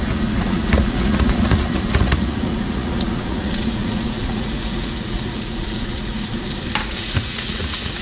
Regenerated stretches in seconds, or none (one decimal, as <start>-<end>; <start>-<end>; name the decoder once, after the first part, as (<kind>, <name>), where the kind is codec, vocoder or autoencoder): 0.0-6.3 (vocoder, Vocos); 6.8-8.0